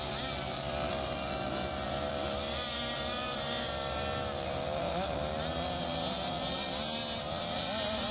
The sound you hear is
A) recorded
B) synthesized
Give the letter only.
A